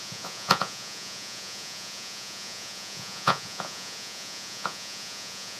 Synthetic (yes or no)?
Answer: yes